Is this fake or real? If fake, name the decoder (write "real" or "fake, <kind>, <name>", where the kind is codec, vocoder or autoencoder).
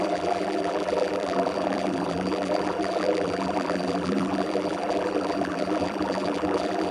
fake, vocoder, BigVGAN v2